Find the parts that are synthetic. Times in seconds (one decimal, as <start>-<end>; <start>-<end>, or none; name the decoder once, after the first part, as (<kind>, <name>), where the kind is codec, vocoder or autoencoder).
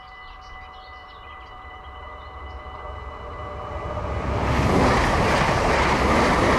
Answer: 1.0-2.8 (vocoder, BigVGAN v2)